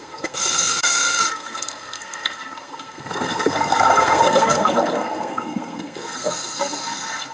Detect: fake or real fake